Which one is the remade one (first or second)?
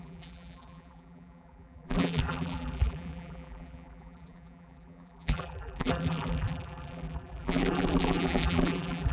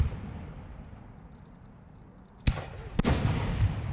first